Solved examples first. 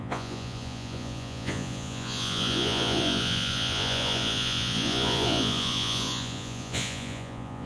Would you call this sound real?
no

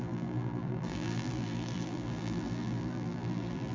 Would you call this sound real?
no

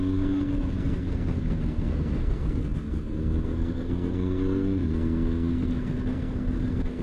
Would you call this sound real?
no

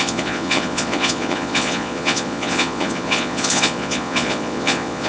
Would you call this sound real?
no